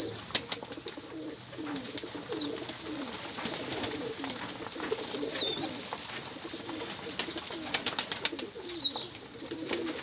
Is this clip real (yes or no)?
yes